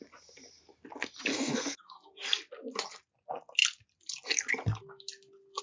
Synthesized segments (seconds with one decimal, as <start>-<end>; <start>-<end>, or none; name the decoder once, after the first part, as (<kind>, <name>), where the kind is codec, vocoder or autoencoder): 1.3-1.8 (codec, SNAC)